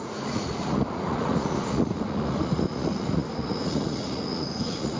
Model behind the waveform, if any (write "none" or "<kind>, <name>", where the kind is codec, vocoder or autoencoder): vocoder, Vocos